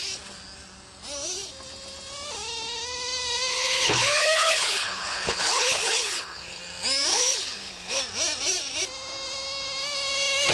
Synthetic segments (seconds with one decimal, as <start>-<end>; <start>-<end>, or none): 3.5-6.6; 7.1-8.0